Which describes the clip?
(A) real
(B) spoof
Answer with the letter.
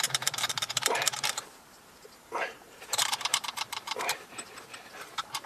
B